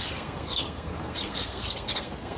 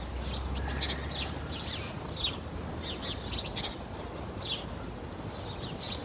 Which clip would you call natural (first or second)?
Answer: second